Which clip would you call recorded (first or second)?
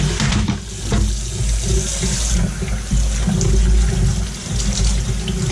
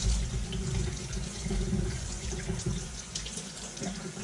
first